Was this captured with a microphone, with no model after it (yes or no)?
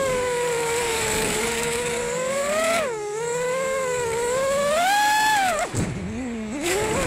no